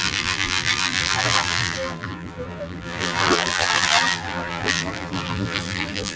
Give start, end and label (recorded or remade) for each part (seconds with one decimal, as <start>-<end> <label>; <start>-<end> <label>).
0.0-6.2 remade